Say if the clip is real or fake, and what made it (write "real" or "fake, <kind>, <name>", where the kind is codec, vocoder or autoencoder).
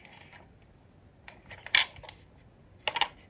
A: real